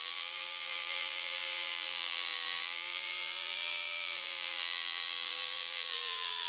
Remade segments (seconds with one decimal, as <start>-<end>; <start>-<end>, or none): 0.0-6.5